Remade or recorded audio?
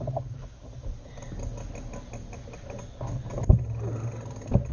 recorded